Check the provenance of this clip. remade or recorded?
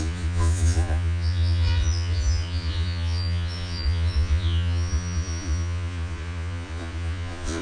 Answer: remade